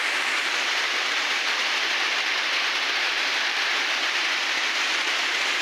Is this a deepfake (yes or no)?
yes